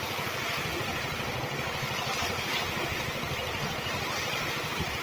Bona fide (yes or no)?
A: yes